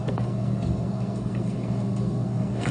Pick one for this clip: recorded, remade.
remade